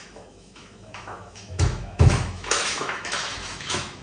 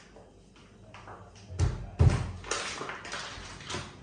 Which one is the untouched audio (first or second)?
second